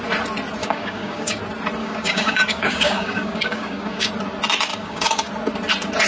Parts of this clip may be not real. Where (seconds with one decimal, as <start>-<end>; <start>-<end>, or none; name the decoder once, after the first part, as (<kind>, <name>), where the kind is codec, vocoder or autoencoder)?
0.6-1.4 (codec, DAC); 1.8-4.1; 4.7-5.3

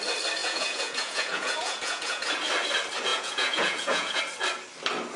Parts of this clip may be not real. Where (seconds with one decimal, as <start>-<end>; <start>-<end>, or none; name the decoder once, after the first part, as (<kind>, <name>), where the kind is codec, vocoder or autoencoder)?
0.4-2.3 (vocoder, Vocos); 3.1-4.2

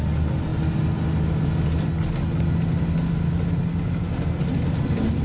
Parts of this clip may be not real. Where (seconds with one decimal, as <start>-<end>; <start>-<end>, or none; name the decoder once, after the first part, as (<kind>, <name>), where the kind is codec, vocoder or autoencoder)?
none

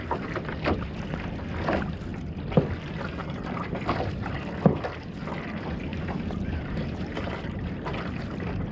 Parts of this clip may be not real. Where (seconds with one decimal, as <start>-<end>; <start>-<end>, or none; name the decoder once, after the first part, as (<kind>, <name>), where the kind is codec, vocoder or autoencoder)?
3.2-4.3 (vocoder, BigVGAN v2); 5.9-7.9

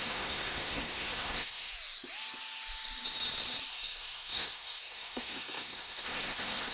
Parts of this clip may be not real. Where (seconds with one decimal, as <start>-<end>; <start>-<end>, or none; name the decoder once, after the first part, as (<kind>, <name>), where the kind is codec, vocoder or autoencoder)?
0.0-1.7 (codec, SNAC); 3.7-6.7